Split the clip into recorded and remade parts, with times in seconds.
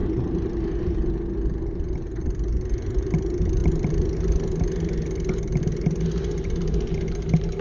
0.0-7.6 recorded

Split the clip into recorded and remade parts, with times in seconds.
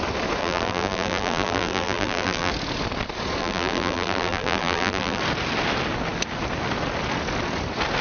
0.0-0.4 recorded; 0.4-2.5 remade; 2.5-3.4 recorded; 3.4-5.2 remade; 5.2-8.0 recorded